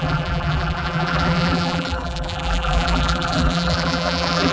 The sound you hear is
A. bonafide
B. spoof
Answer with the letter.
B